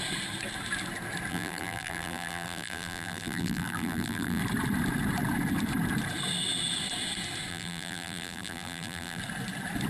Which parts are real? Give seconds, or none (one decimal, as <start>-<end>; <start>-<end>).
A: 0.0-1.3; 4.4-7.5; 9.2-9.9